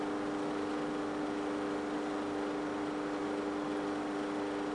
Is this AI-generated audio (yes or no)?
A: no